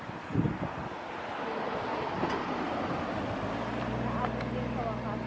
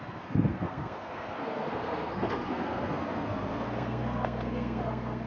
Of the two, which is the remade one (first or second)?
second